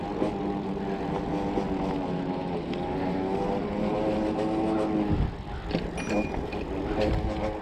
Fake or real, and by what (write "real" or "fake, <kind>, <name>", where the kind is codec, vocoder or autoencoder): real